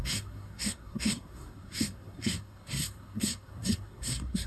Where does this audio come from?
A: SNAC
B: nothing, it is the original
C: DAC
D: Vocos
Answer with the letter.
A